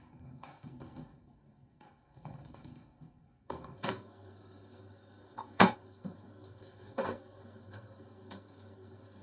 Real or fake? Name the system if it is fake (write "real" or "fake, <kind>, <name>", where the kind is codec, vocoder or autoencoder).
fake, codec, SNAC